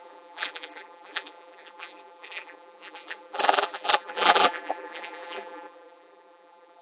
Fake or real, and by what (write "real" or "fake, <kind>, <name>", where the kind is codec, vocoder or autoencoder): fake, vocoder, BigVGAN v2